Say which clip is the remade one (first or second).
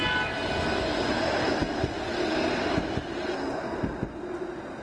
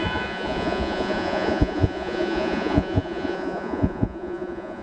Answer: second